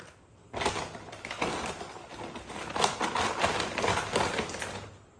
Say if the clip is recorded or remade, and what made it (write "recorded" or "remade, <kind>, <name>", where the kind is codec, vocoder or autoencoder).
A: recorded